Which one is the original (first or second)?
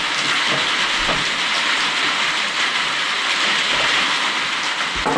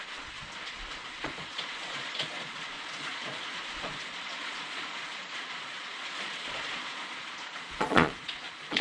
first